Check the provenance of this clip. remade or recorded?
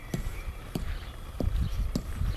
recorded